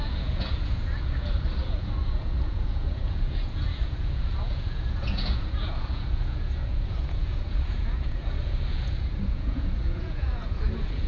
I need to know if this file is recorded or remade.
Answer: remade